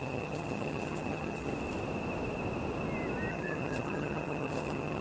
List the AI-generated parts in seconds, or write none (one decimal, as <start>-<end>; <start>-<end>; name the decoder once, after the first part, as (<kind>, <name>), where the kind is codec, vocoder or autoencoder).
0.0-1.5 (vocoder, HiFi-GAN); 3.3-5.0